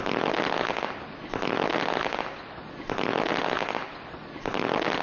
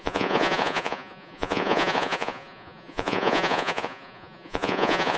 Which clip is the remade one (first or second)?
second